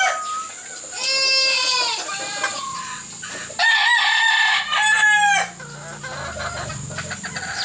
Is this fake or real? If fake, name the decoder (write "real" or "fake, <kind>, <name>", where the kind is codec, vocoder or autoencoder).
real